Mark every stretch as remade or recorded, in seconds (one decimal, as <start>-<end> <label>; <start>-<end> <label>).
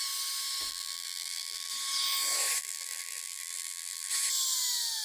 0.0-0.7 recorded; 0.7-1.7 remade; 1.7-2.6 recorded; 2.6-4.1 remade; 4.1-5.0 recorded